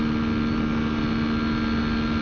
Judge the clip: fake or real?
real